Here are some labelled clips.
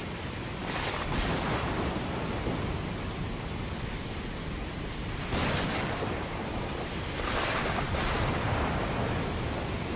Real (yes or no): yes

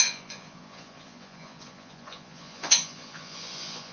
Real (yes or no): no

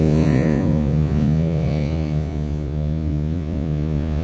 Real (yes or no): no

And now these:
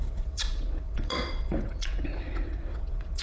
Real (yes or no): no